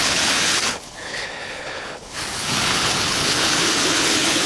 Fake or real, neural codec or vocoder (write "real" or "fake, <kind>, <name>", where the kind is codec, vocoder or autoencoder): fake, codec, HILCodec